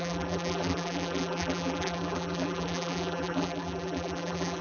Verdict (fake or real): fake